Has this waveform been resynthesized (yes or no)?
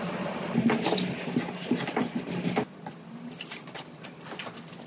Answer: no